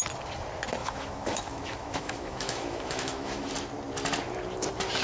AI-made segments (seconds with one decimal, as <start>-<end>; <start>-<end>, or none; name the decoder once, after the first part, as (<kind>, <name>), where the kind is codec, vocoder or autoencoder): 0.8-3.5 (autoencoder, DAC-VAE)